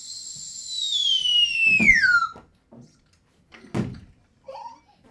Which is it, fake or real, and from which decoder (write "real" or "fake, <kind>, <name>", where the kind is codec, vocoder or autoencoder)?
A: real